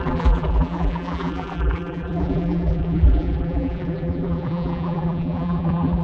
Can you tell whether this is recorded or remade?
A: remade